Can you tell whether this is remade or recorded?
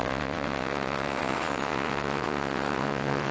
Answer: remade